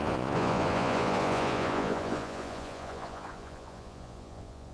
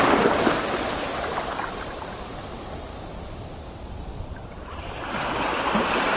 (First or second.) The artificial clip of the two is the first